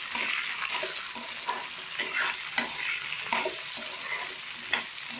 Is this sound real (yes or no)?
yes